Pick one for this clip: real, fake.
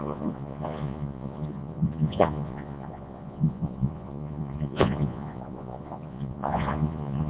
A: fake